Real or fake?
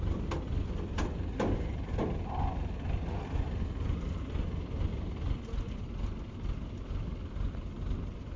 real